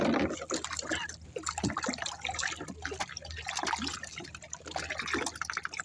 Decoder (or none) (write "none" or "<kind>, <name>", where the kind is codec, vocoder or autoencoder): none